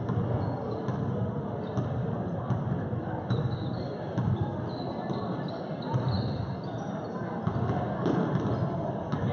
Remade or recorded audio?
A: recorded